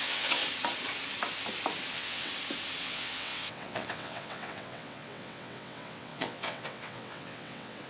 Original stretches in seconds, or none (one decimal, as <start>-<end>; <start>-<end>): 0.4-1.9; 2.3-2.8